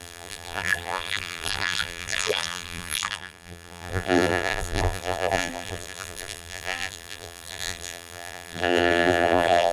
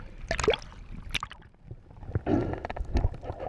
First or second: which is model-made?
first